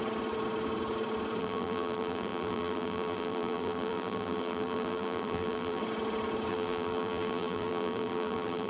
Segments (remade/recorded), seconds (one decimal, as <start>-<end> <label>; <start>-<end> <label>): 0.0-1.4 recorded; 1.4-5.8 remade; 5.8-6.5 recorded; 6.5-8.7 remade